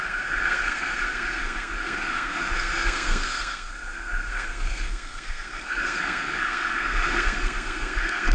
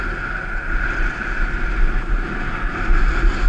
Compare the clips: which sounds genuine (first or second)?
second